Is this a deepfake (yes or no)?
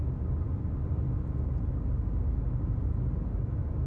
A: no